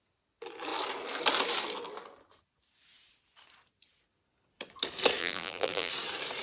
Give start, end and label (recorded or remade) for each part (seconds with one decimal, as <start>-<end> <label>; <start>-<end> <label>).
0.0-5.2 recorded; 5.2-5.9 remade; 5.9-6.4 recorded